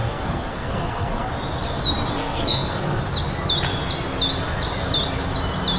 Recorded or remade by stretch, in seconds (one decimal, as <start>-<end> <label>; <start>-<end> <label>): 0.0-1.3 remade; 1.3-2.1 recorded; 2.1-3.0 remade; 3.0-5.8 recorded